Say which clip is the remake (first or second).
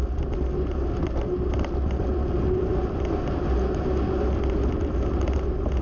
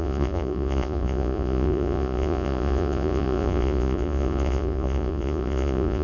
second